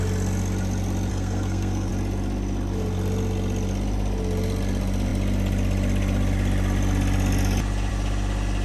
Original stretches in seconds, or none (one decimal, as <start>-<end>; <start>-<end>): 0.0-1.1; 1.9-8.6